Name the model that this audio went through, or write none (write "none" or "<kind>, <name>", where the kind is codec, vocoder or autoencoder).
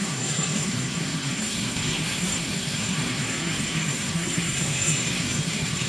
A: codec, SNAC